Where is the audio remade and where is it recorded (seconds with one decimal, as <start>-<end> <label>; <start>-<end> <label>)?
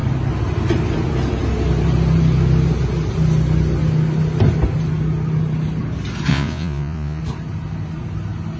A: 0.0-6.3 recorded; 6.3-7.2 remade; 7.2-8.6 recorded